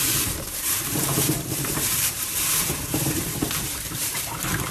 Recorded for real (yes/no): no